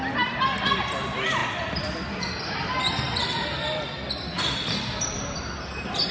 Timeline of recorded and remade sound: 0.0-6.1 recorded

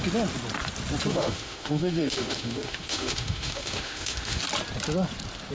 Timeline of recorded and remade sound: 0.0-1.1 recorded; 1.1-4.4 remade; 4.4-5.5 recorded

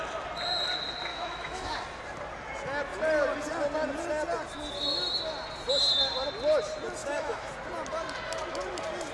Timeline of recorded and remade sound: 0.0-1.1 recorded; 1.1-1.7 remade; 1.7-7.0 recorded; 7.0-7.5 remade; 7.5-9.1 recorded

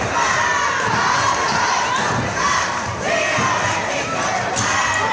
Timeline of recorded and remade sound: 0.0-0.5 recorded; 0.5-3.0 remade; 3.0-5.1 recorded